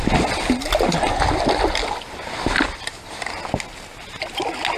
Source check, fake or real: real